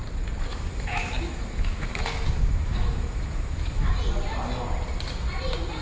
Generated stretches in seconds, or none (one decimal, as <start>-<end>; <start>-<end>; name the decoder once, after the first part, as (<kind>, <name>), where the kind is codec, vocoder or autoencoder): 0.5-4.0 (autoencoder, DAC-VAE)